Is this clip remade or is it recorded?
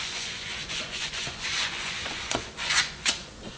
remade